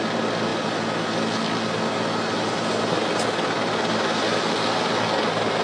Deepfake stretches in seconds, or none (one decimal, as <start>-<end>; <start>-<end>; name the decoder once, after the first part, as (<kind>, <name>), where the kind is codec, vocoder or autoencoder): none

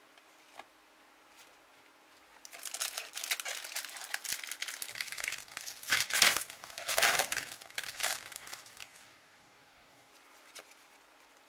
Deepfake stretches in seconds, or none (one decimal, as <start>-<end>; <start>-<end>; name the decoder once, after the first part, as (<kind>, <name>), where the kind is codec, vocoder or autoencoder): 4.9-10.1 (codec, DAC)

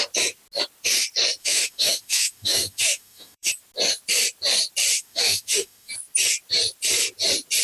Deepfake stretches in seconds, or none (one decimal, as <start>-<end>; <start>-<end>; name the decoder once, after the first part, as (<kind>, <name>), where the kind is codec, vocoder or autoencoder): 1.4-3.5 (autoencoder, DAC-VAE); 4.9-5.9

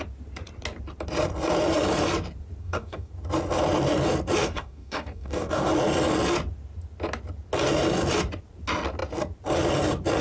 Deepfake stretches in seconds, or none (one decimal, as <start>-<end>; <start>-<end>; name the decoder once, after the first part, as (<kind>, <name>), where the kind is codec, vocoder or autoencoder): 2.6-3.1 (codec, DAC); 4.4-5.7

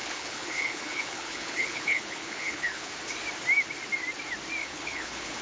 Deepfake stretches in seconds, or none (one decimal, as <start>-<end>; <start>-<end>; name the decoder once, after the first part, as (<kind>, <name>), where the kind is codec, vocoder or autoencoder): 0.0-2.9 (codec, HILCodec); 4.6-5.4

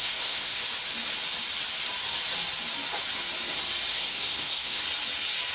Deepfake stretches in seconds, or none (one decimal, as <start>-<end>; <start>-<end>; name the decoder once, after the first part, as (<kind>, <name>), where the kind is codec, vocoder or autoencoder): 0.0-0.6 (codec, SNAC); 3.9-4.8

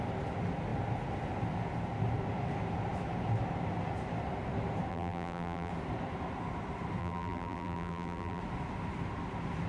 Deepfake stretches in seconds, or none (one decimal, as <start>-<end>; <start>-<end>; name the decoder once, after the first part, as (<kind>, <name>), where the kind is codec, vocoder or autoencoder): 4.9-5.7 (vocoder, BigVGAN v2); 7.0-8.4

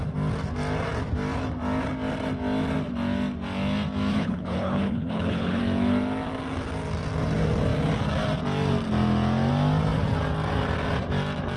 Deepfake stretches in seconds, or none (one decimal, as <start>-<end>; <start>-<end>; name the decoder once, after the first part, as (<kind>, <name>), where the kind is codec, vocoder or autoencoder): 4.1-5.6 (codec, HILCodec)